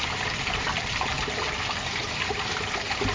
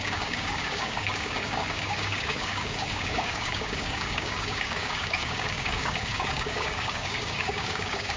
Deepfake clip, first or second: second